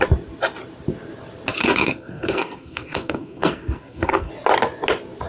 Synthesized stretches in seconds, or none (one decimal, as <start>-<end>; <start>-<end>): 1.6-4.3